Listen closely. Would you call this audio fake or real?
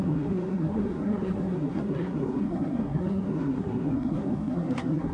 fake